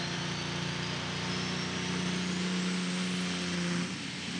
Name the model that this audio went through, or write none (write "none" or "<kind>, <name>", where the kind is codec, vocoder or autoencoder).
none